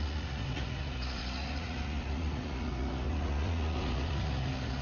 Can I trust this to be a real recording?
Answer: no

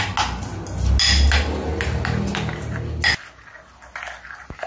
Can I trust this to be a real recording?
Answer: yes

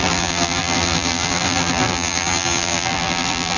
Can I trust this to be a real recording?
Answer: no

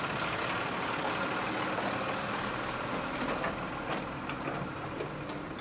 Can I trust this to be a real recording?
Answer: yes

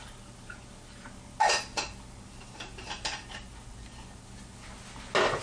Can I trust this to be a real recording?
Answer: yes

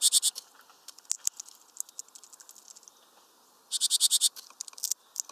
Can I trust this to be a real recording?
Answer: yes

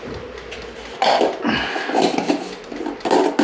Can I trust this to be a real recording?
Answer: yes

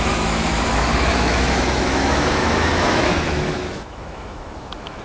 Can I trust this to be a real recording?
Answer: no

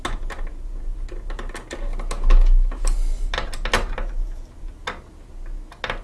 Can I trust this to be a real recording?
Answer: yes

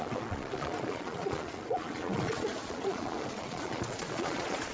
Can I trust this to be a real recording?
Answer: no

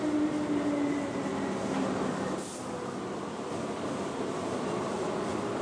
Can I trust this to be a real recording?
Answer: yes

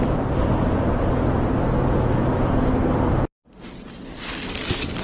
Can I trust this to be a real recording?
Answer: yes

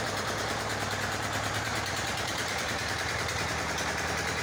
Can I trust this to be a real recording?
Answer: no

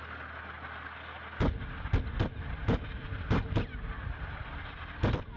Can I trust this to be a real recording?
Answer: yes